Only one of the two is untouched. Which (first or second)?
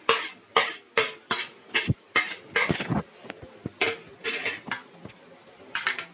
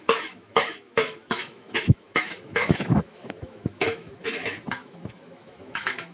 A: first